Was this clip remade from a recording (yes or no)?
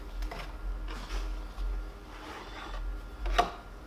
no